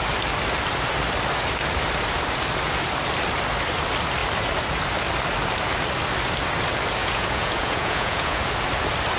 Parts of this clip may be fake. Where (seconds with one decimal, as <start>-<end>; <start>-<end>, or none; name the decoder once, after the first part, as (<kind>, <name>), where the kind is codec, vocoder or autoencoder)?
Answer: 7.0-8.4 (vocoder, Vocos)